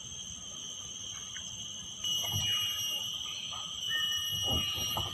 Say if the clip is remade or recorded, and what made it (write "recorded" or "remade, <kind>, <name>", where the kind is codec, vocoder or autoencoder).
recorded